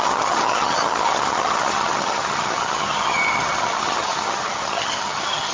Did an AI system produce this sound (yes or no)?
yes